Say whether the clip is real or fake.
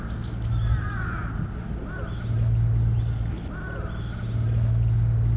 real